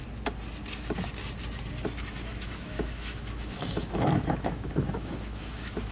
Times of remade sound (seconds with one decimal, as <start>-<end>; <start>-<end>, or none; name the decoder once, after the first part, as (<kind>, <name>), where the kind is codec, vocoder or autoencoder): 2.0-5.9 (autoencoder, DAC-VAE)